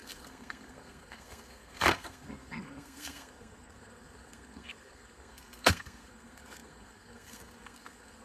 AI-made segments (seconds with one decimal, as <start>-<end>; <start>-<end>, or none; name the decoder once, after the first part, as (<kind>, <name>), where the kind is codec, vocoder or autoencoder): 0.0-8.2 (codec, SNAC)